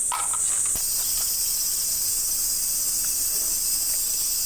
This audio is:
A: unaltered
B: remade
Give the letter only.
A